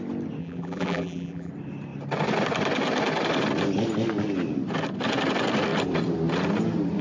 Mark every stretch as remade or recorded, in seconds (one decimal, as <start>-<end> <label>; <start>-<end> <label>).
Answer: 0.0-0.4 recorded; 0.4-1.5 remade; 1.5-7.0 recorded